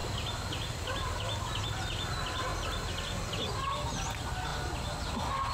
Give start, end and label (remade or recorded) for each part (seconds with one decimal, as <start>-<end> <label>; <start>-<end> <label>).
0.0-5.5 recorded

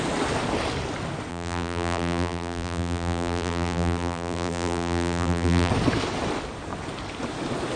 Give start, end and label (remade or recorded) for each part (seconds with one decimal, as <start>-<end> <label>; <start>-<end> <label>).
0.0-1.3 recorded; 1.3-5.7 remade; 5.7-7.8 recorded

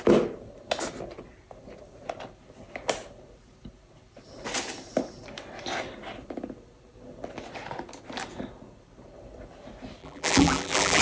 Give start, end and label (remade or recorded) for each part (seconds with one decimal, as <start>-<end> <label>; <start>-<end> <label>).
0.0-10.0 recorded; 10.0-11.0 remade

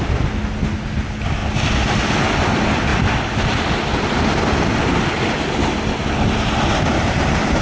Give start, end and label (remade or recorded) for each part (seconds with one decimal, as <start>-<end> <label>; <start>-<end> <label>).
0.0-2.9 recorded; 2.9-4.7 remade; 4.7-7.6 recorded

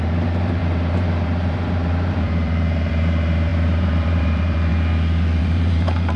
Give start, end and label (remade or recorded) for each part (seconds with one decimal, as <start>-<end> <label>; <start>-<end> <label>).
0.0-4.7 remade; 4.7-5.4 recorded; 5.4-6.2 remade

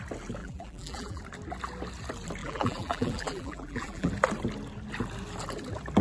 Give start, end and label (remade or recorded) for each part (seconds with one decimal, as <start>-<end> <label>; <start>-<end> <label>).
0.0-0.4 recorded; 0.4-1.2 remade; 1.2-2.4 recorded; 2.4-4.1 remade; 4.1-6.0 recorded

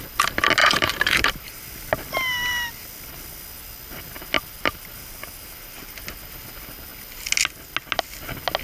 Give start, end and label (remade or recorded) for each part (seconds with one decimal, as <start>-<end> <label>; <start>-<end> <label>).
0.0-0.6 recorded; 0.6-1.6 remade; 1.6-4.5 recorded; 4.5-6.4 remade; 6.4-8.6 recorded